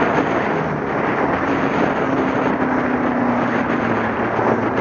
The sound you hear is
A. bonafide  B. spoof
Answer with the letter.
A